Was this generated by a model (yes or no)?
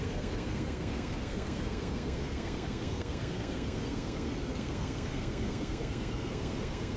yes